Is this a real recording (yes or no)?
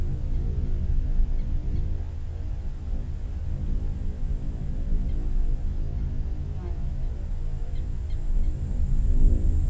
yes